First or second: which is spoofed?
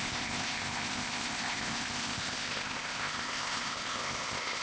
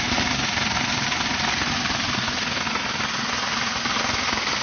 first